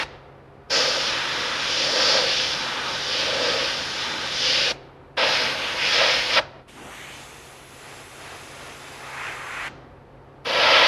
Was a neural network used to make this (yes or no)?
no